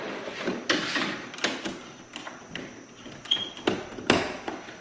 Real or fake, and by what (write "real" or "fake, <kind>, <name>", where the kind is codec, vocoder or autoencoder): real